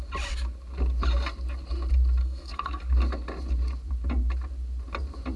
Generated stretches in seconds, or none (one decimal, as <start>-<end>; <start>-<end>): 2.2-2.8